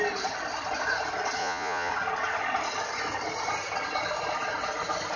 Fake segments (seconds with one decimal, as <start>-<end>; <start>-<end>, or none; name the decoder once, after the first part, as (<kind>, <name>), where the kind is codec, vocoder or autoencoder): 1.4-1.9 (vocoder, Vocos)